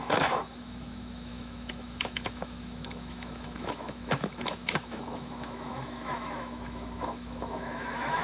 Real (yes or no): no